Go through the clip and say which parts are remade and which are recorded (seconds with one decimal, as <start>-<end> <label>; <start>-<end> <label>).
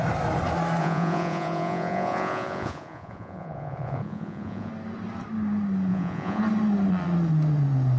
0.0-0.8 recorded; 0.8-4.7 remade; 4.7-5.9 recorded; 5.9-6.4 remade; 6.4-8.0 recorded